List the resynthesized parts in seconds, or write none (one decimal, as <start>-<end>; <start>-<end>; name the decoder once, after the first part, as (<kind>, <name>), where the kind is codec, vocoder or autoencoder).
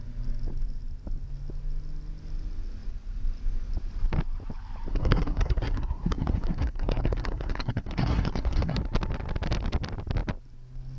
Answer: 4.9-8.8 (codec, SNAC)